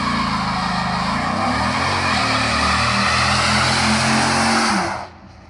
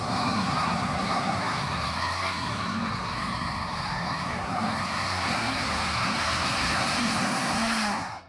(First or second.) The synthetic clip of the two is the second